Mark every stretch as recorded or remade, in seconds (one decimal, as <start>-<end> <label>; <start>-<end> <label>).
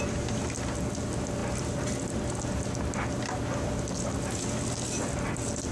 0.0-5.7 recorded